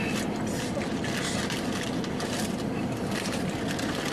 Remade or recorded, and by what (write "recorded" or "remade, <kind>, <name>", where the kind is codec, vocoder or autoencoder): recorded